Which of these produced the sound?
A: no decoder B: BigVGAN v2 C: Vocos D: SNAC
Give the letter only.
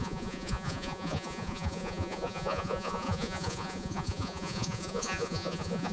C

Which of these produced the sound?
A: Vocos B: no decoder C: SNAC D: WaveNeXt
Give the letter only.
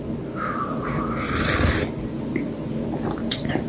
B